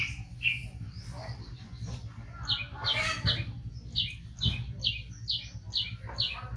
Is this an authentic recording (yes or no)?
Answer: yes